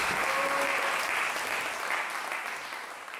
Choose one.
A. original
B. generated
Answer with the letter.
A